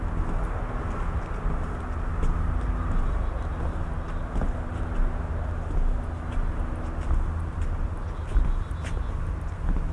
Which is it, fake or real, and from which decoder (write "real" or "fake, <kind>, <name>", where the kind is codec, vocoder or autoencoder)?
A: real